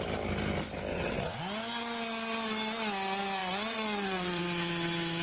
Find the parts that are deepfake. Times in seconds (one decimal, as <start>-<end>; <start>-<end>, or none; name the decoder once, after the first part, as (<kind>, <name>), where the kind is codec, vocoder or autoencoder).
0.9-1.4 (vocoder, WaveNeXt); 3.4-4.4